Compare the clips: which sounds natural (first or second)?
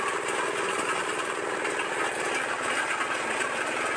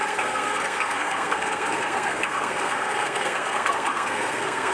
first